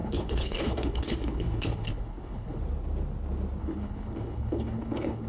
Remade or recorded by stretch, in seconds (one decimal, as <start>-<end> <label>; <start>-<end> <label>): 0.0-2.6 remade; 2.6-3.6 recorded; 3.6-5.3 remade